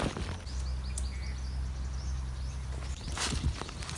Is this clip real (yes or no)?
yes